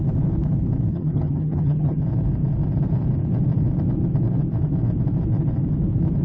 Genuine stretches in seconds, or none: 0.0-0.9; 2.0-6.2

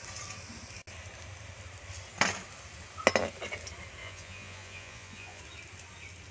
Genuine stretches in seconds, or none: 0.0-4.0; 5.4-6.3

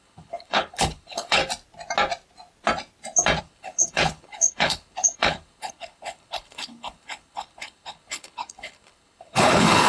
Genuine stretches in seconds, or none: 1.4-3.4

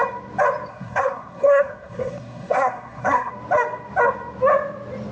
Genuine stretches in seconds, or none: 0.0-0.7; 3.3-5.1

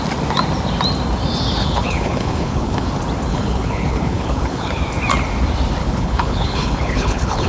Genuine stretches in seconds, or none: 0.0-1.6; 2.9-3.3; 4.8-5.8

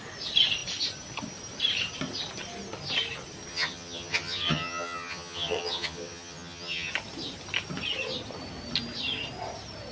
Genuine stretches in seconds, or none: 0.0-3.5; 6.9-9.9